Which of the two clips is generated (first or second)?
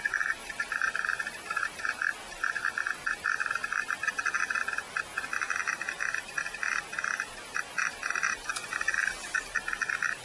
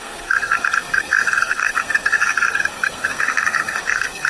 second